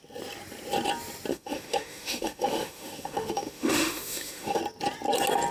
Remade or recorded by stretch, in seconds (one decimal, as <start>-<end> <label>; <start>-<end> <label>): 0.0-1.3 recorded; 1.3-4.6 remade; 4.6-5.5 recorded